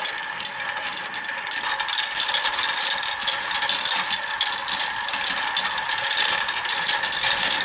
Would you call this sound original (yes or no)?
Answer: yes